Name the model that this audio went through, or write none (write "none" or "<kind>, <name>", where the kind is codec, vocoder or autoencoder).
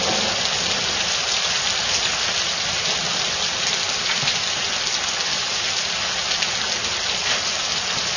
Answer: none